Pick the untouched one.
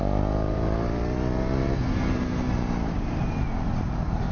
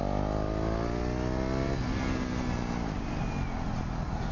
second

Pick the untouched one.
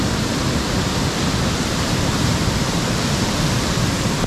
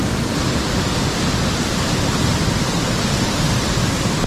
second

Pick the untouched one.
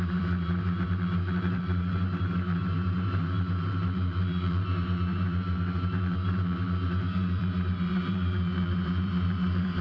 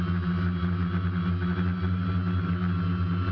second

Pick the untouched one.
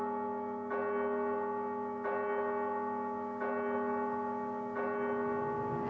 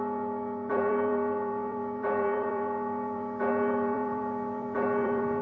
first